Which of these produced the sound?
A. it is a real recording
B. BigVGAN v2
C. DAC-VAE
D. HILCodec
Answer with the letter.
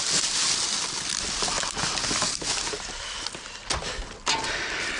A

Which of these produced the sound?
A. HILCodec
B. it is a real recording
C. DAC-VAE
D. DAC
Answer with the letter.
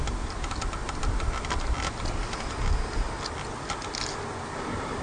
B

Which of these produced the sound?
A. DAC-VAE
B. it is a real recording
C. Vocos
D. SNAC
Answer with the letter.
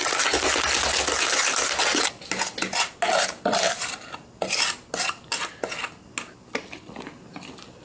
B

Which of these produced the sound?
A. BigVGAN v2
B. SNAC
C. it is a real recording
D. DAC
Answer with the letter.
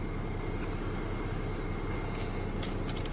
C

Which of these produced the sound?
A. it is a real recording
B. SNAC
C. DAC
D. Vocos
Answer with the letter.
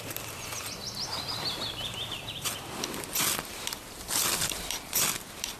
A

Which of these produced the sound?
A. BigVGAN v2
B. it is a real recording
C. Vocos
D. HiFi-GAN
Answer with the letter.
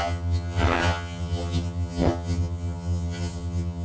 D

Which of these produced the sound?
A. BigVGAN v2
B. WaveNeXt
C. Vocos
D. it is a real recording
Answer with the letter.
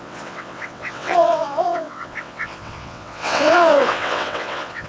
B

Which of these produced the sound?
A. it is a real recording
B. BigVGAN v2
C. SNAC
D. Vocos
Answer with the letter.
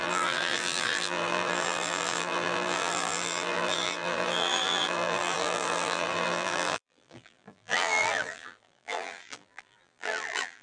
B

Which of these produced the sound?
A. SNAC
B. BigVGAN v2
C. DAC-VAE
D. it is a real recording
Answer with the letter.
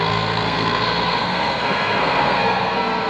A